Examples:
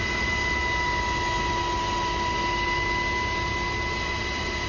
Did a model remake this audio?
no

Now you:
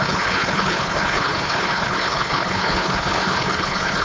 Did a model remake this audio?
yes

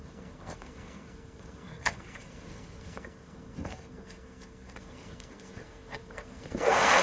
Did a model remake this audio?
yes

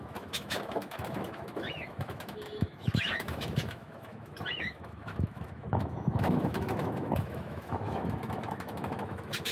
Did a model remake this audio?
yes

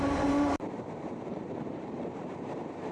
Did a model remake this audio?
yes